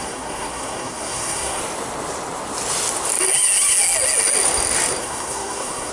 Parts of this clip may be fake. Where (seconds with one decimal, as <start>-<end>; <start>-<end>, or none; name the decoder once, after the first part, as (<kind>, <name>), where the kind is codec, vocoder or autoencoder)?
0.0-1.6 (codec, SNAC); 5.0-5.9